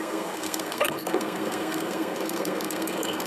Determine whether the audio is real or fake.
fake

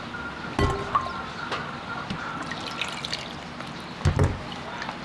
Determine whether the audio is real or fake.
real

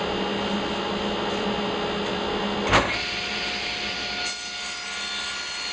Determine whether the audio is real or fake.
real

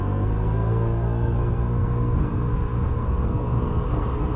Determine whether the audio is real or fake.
fake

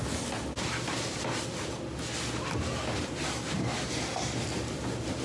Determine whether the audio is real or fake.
real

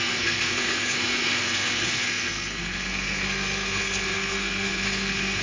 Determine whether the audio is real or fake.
fake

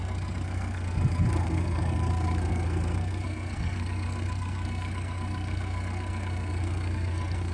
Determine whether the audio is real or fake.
fake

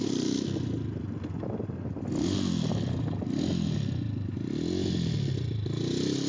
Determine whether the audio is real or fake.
real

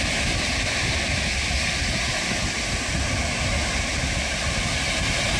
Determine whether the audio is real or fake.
real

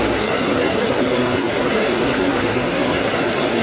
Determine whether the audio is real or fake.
fake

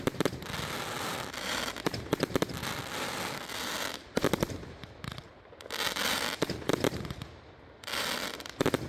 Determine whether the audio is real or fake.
real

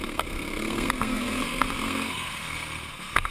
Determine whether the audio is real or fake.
fake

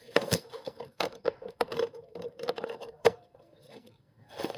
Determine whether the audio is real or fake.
fake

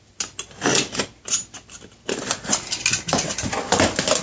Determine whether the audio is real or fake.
real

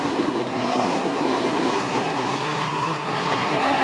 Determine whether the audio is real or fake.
fake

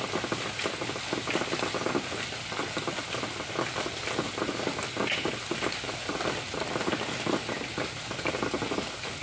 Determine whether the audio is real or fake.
real